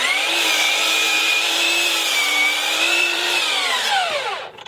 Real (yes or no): no